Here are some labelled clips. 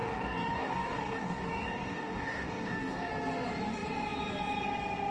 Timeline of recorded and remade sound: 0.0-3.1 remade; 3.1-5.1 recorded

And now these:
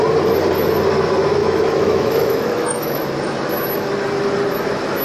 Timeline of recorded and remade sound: 0.0-1.4 recorded; 1.4-3.0 remade; 3.0-5.0 recorded

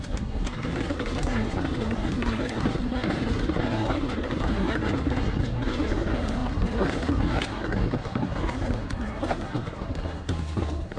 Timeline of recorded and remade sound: 0.0-11.0 remade

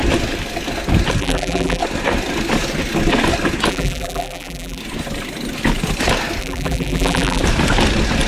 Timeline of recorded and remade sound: 0.0-1.2 recorded; 1.2-1.8 remade; 1.8-3.7 recorded; 3.7-4.8 remade; 4.8-6.4 recorded; 6.4-7.4 remade; 7.4-8.3 recorded

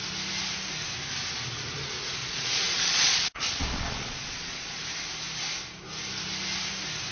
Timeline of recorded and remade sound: 0.0-2.2 recorded; 2.2-4.8 remade; 4.8-7.1 recorded

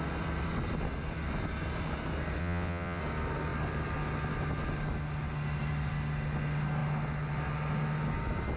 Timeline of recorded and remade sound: 0.0-2.4 recorded; 2.4-3.0 remade; 3.0-8.6 recorded